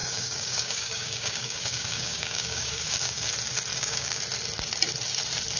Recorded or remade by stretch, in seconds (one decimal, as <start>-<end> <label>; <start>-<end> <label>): 0.0-3.3 remade; 3.3-3.7 recorded; 3.7-4.2 remade; 4.2-5.6 recorded